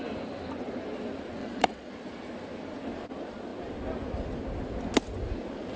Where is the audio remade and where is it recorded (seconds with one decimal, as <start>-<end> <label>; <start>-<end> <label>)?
0.0-1.4 recorded; 1.4-1.9 remade; 1.9-5.8 recorded